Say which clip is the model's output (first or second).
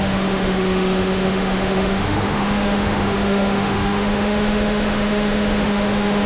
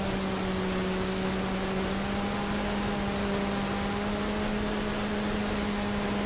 first